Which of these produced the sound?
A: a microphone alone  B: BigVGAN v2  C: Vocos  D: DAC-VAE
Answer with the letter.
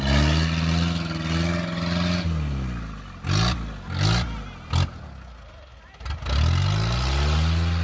A